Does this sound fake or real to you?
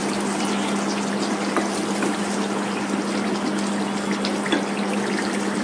real